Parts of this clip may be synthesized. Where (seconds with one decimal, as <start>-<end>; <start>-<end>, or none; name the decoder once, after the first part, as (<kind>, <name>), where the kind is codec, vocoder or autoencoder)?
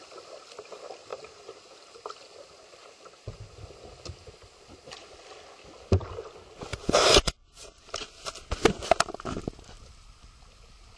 1.1-2.0 (vocoder, BigVGAN v2); 6.7-8.1